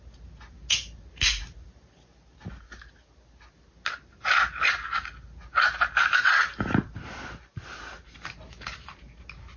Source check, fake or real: real